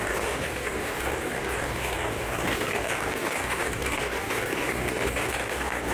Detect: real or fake fake